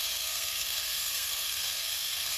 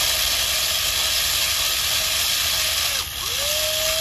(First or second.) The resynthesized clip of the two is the first